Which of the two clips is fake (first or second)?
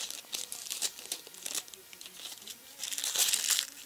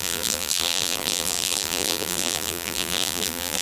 second